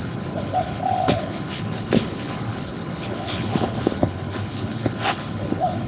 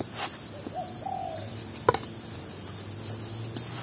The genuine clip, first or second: second